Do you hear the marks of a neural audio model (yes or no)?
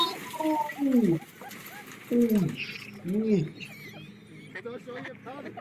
no